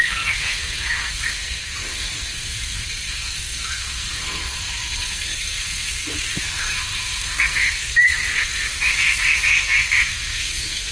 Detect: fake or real fake